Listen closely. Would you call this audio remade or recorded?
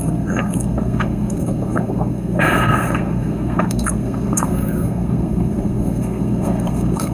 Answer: remade